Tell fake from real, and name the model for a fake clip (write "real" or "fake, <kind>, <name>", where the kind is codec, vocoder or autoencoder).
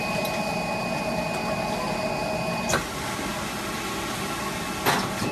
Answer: real